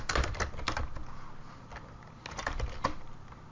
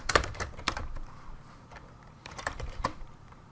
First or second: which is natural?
first